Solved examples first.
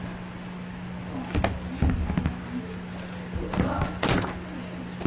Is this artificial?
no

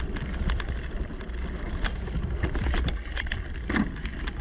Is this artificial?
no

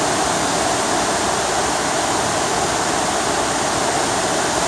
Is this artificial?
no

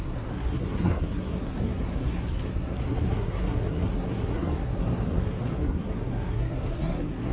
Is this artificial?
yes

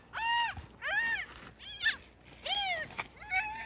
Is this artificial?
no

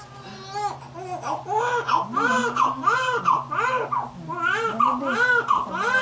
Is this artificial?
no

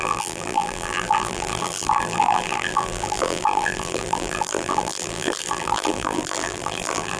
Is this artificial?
yes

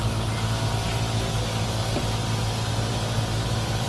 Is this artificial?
no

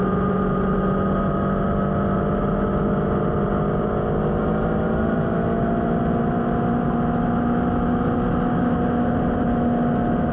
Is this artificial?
no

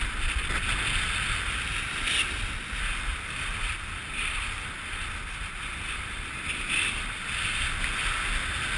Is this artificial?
no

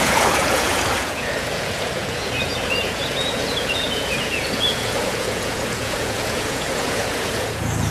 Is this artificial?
yes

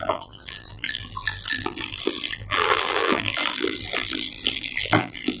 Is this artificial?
yes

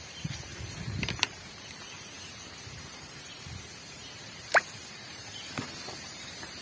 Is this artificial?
yes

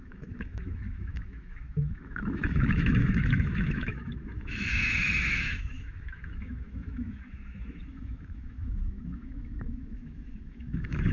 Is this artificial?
yes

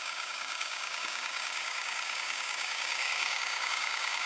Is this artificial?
yes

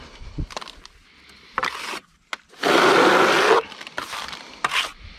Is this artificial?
no